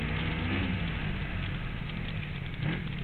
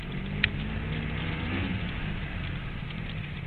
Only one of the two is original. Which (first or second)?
first